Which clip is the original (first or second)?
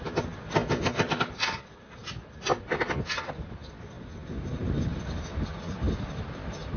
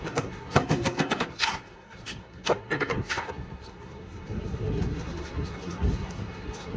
first